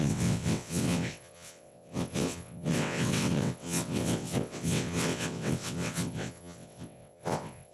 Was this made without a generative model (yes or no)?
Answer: no